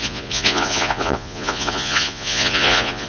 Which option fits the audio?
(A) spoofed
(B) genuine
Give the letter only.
A